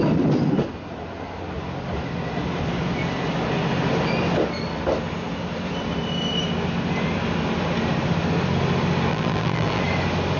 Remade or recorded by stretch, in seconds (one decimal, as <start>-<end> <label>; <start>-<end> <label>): 0.0-9.1 recorded; 9.1-9.8 remade; 9.8-10.4 recorded